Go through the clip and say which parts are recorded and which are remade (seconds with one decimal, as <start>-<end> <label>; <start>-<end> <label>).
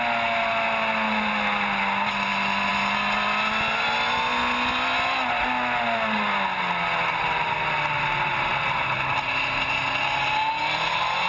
0.0-11.3 recorded